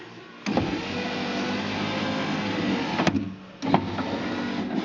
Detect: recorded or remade recorded